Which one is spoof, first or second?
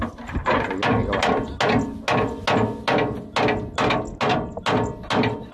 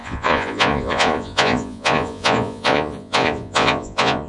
second